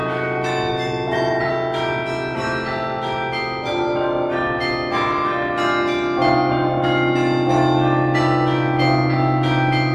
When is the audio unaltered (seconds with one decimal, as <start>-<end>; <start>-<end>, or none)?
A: 0.0-0.7; 1.5-9.9